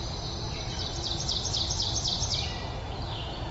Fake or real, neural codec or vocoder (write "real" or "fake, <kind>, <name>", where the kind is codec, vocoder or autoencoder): real